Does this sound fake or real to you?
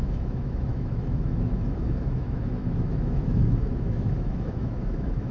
fake